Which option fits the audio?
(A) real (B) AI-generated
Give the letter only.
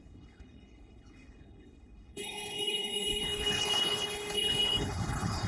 B